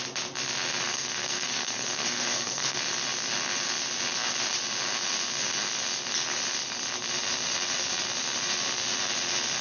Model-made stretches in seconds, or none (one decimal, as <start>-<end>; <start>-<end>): 0.8-2.8